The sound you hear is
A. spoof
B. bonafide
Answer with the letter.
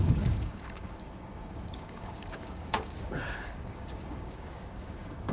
A